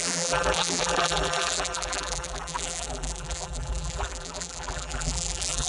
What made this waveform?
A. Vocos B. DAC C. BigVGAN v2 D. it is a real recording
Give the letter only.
C